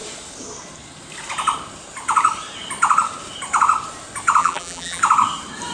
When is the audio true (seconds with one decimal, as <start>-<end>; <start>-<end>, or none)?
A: 0.0-4.4; 5.0-5.7